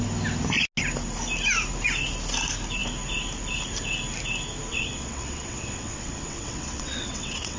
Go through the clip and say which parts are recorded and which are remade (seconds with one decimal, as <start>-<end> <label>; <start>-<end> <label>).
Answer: 0.0-4.7 recorded; 4.7-7.6 remade